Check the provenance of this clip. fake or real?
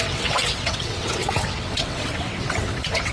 fake